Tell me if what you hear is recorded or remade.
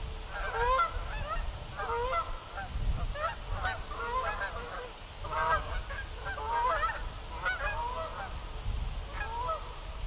recorded